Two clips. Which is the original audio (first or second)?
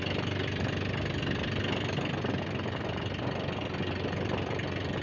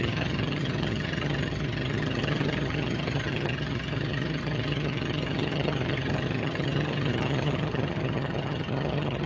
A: first